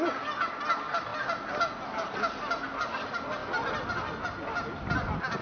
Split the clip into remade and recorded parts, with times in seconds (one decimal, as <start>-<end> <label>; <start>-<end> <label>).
0.0-5.4 recorded

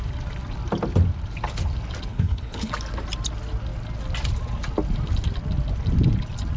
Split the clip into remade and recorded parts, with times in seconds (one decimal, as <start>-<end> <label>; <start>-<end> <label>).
0.0-2.1 recorded; 2.1-2.7 remade; 2.7-6.6 recorded

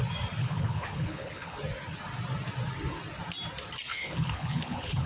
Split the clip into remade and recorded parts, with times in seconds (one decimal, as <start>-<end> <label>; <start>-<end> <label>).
0.0-0.4 recorded; 0.4-1.6 remade; 1.6-3.9 recorded; 3.9-5.1 remade

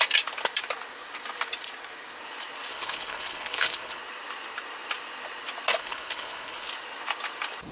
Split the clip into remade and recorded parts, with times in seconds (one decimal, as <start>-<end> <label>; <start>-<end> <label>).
0.0-2.7 recorded; 2.7-4.0 remade; 4.0-5.8 recorded; 5.8-6.7 remade; 6.7-7.7 recorded

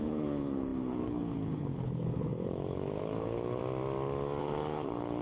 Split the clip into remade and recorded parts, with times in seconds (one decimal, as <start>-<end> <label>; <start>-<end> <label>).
0.0-3.6 remade; 3.6-4.4 recorded; 4.4-5.2 remade

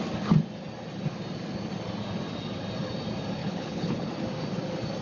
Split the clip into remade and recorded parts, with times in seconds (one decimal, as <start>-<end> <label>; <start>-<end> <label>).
0.0-3.4 recorded; 3.4-4.1 remade; 4.1-5.0 recorded

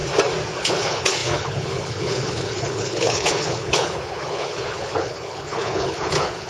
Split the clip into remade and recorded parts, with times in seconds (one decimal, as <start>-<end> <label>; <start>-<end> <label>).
0.0-0.6 recorded; 0.6-6.5 remade

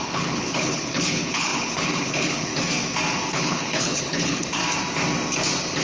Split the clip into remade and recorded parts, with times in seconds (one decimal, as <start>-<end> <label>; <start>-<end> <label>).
0.0-2.5 remade; 2.5-3.3 recorded; 3.3-4.6 remade; 4.6-5.8 recorded